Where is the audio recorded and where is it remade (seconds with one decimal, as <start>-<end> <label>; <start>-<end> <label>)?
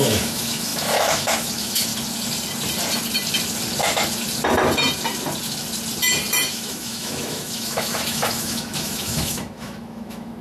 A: 0.0-1.9 remade; 1.9-6.5 recorded; 6.5-10.4 remade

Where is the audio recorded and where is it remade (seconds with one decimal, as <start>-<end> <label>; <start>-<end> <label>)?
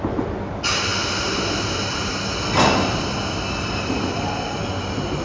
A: 0.0-5.2 recorded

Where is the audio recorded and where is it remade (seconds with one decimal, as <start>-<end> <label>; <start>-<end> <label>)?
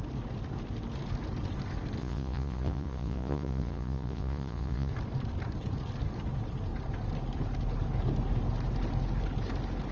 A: 0.0-2.0 recorded; 2.0-4.9 remade; 4.9-9.9 recorded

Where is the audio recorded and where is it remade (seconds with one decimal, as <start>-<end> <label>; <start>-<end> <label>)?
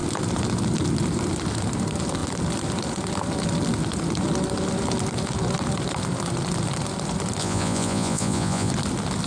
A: 0.0-7.4 recorded; 7.4-8.7 remade; 8.7-9.3 recorded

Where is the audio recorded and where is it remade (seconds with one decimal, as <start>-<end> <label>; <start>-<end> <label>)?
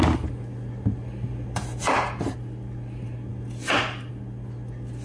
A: 0.0-5.0 recorded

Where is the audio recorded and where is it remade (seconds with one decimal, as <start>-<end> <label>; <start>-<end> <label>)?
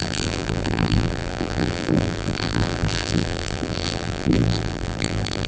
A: 0.0-5.5 remade